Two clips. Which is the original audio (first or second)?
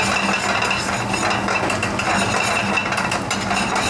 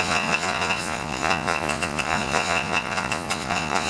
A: first